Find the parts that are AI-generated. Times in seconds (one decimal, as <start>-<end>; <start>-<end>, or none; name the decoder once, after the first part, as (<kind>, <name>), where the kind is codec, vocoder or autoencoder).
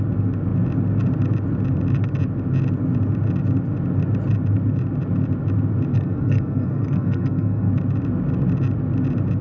5.9-7.7 (codec, SNAC)